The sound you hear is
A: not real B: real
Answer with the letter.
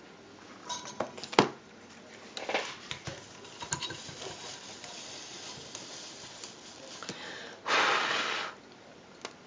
B